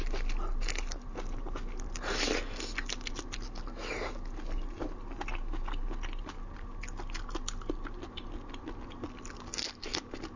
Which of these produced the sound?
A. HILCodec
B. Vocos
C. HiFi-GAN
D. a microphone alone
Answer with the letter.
D